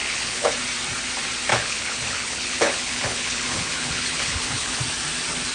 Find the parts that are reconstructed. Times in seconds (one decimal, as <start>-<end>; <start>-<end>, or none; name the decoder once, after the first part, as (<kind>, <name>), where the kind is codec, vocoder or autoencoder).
0.0-0.5 (codec, HILCodec); 1.5-4.8